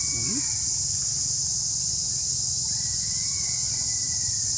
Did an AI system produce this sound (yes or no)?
no